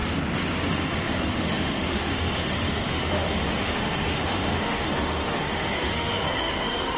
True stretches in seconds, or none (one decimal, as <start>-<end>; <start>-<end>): 0.0-0.7